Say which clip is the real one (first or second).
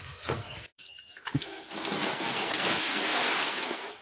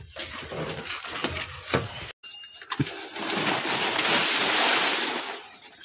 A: second